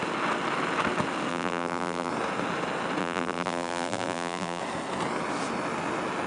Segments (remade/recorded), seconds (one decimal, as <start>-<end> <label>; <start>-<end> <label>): 0.0-1.3 recorded; 1.3-2.1 remade; 2.1-3.0 recorded; 3.0-4.6 remade; 4.6-6.3 recorded